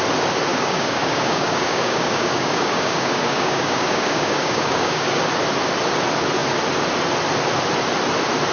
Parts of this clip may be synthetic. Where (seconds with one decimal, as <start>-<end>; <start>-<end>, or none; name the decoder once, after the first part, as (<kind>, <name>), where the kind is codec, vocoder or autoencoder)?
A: 0.5-5.2 (codec, DAC)